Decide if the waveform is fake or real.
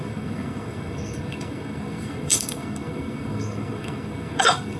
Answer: fake